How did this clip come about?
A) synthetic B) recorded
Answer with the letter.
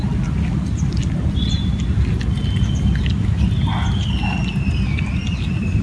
B